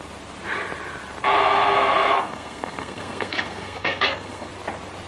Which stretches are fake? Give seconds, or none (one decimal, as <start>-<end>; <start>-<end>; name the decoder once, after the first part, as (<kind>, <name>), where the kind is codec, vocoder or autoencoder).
1.4-4.5 (codec, SNAC)